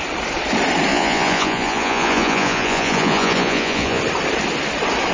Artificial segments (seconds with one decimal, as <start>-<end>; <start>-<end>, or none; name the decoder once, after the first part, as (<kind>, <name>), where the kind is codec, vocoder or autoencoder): 0.9-4.0 (vocoder, Vocos)